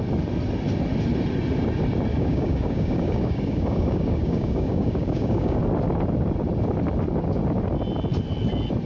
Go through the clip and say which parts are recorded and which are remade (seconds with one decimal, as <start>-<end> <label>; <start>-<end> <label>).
0.0-2.1 recorded; 2.1-5.6 remade; 5.6-8.9 recorded